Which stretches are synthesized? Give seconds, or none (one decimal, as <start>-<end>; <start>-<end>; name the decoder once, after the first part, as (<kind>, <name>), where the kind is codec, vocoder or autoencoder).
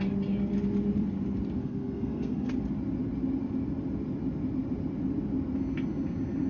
1.6-2.5 (codec, SNAC)